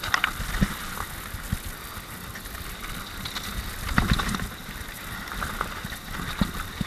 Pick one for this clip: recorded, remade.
recorded